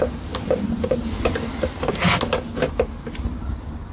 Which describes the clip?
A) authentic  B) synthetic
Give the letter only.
A